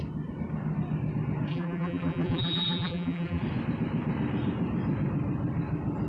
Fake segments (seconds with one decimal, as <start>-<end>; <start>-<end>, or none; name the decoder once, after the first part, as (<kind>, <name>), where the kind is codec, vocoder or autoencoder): 1.5-3.4 (vocoder, BigVGAN v2)